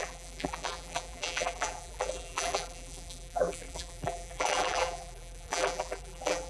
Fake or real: fake